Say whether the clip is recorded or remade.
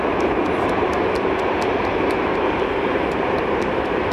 recorded